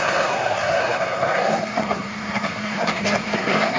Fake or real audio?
fake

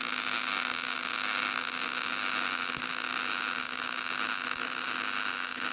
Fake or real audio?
real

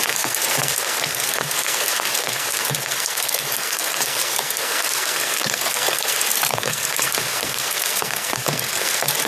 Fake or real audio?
fake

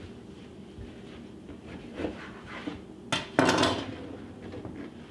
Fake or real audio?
real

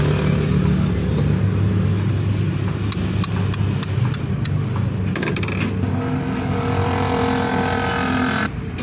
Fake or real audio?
real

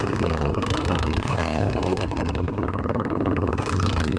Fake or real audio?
fake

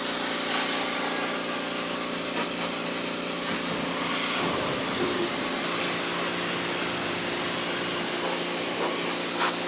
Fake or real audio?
real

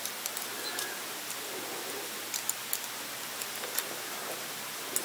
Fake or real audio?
real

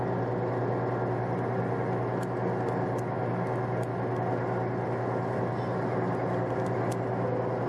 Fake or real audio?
real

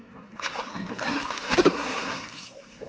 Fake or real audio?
fake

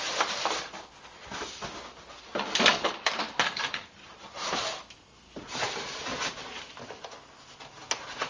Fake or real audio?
real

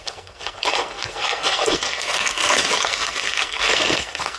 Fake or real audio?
fake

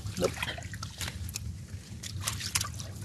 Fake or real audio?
real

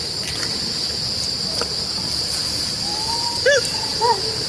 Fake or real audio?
real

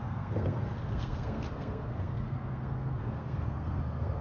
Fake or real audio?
fake